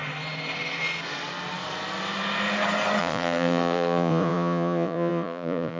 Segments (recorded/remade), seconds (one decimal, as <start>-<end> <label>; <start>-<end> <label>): 0.0-3.0 recorded; 3.0-5.8 remade